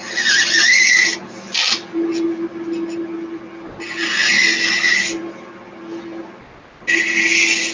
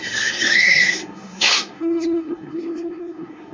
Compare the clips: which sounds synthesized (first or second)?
second